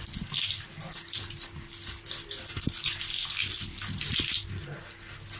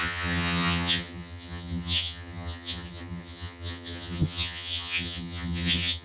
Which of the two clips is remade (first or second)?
second